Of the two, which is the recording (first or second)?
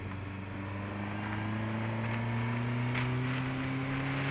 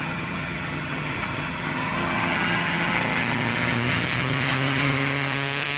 first